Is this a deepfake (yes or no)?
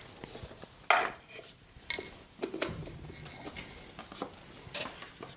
no